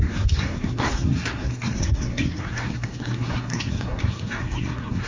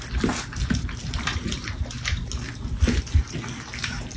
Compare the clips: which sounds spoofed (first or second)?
first